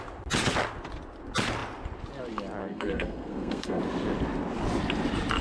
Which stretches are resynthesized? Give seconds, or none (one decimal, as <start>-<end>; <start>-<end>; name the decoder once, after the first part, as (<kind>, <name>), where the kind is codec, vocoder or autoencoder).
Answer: 2.6-3.8 (codec, SNAC)